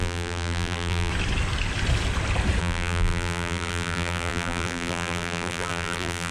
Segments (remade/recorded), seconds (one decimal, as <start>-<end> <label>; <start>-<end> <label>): 0.0-1.1 remade; 1.1-2.6 recorded; 2.6-6.3 remade